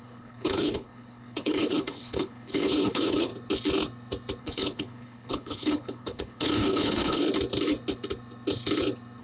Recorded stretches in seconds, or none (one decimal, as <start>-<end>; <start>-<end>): 3.3-4.4; 7.2-9.2